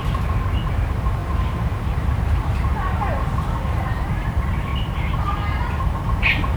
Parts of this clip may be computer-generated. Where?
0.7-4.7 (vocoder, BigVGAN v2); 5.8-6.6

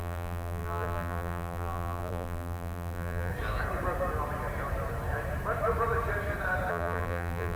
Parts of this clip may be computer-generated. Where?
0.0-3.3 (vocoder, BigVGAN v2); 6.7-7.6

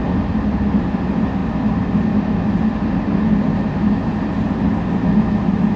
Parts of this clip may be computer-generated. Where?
none